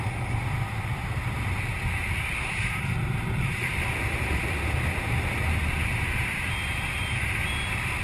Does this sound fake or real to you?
real